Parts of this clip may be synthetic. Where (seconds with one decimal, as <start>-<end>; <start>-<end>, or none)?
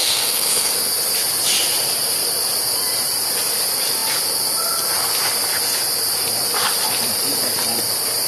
0.0-0.7